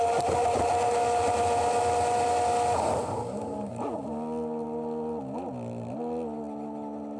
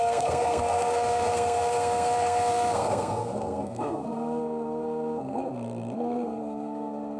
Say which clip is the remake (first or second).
second